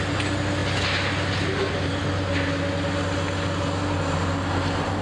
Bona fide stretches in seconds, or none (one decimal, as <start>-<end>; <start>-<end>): 0.0-5.0